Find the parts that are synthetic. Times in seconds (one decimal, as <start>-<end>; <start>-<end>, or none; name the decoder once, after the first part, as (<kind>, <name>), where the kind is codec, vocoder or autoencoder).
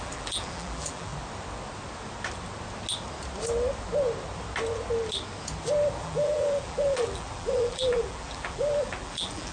0.0-1.1 (vocoder, BigVGAN v2); 6.0-9.5